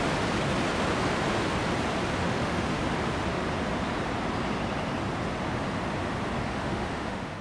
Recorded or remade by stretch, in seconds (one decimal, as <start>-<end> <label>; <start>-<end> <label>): 0.0-2.2 recorded; 2.2-2.8 remade; 2.8-6.5 recorded; 6.5-7.4 remade